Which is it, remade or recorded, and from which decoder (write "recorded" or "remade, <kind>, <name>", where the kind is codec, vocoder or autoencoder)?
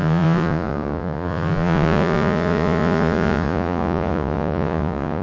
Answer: remade, vocoder, Vocos